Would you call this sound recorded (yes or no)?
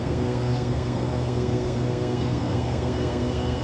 no